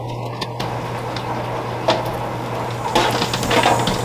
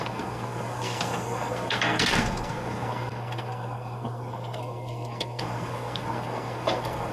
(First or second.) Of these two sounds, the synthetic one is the second